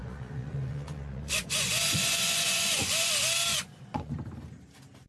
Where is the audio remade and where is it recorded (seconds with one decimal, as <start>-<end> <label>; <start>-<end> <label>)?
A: 0.0-3.1 remade; 3.1-3.5 recorded; 3.5-4.1 remade; 4.1-5.1 recorded